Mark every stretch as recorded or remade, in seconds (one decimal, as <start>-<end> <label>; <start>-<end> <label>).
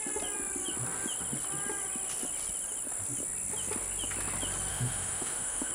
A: 0.0-4.7 recorded; 4.7-5.7 remade